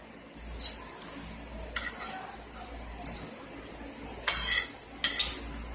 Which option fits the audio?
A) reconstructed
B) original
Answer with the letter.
B